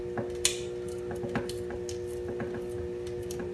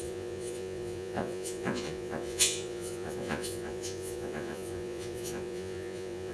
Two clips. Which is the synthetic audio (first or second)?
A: second